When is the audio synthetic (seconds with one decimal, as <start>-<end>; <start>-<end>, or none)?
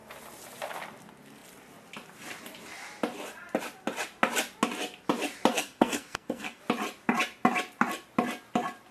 5.5-6.6